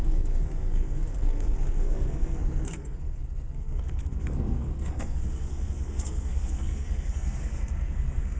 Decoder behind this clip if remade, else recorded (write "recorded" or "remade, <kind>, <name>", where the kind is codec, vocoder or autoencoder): remade, codec, SNAC